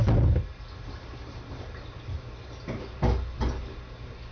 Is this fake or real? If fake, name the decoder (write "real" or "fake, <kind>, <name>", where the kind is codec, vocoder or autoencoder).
real